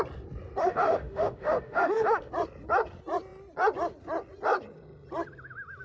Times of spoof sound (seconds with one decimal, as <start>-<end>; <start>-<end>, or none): 0.6-2.3